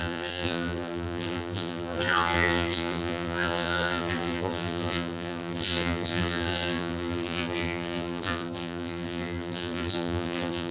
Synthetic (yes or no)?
yes